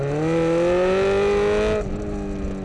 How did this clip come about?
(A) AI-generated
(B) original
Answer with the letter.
B